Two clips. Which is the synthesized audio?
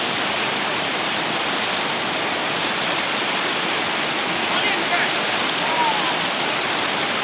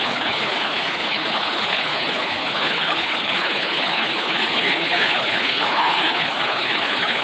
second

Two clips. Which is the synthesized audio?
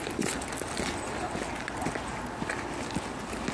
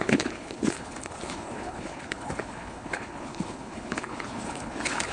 second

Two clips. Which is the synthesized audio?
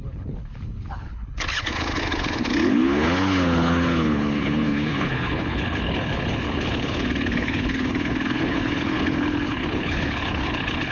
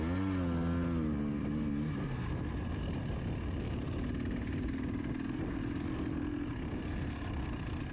first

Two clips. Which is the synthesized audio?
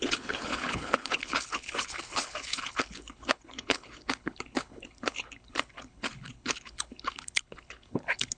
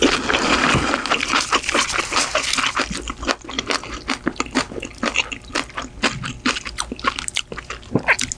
first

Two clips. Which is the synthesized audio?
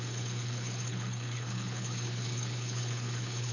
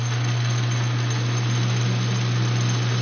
first